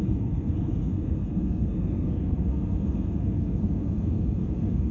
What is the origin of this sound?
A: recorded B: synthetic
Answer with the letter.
B